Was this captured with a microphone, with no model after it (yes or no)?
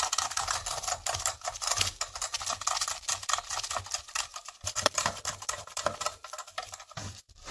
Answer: no